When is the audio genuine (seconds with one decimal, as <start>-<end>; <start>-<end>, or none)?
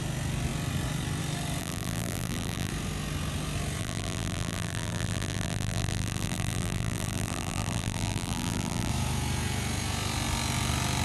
0.0-1.6; 2.7-3.8; 8.9-11.0